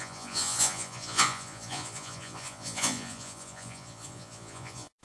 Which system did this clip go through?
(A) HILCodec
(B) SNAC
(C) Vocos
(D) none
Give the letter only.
C